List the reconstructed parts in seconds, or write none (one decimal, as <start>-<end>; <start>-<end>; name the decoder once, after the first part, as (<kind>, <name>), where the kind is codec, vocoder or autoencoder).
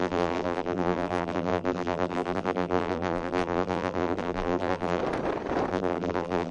0.0-5.0 (vocoder, BigVGAN v2); 5.7-6.5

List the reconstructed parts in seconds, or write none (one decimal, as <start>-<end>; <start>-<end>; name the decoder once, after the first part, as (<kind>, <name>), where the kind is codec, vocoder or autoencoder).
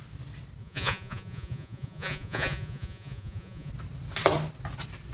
0.6-3.7 (vocoder, Vocos)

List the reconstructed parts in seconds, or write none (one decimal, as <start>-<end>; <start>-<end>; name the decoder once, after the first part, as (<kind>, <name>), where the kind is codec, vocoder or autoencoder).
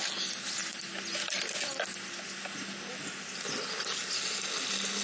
none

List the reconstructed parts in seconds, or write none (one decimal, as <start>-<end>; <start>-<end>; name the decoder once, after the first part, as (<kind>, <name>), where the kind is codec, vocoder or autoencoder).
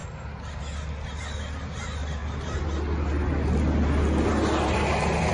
none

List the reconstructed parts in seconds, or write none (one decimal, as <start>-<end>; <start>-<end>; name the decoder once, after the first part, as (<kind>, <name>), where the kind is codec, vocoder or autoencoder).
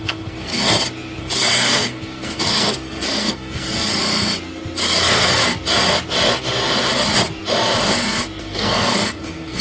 0.0-0.5 (codec, SNAC); 1.2-4.0; 4.8-5.4; 8.4-9.6